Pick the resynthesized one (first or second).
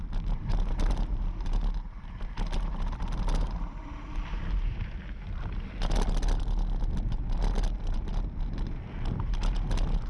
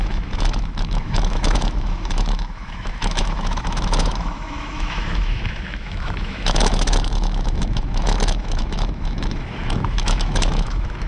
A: second